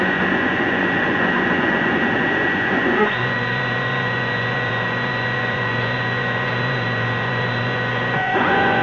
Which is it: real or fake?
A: fake